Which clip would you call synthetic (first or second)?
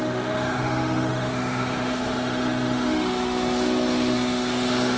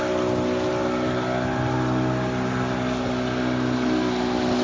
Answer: first